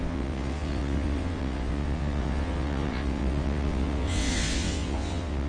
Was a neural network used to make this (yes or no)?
yes